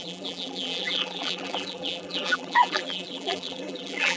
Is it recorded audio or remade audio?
remade